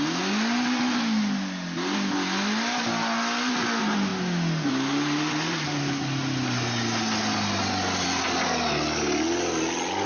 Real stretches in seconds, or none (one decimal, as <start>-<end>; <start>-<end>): 0.0-10.1